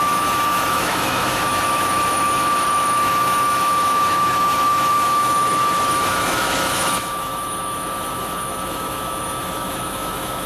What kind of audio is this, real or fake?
fake